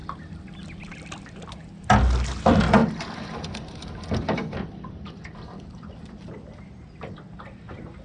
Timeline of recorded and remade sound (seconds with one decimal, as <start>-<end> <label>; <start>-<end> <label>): 0.0-8.0 recorded